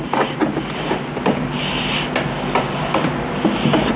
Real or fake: real